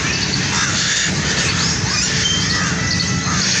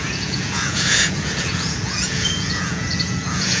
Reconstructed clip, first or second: second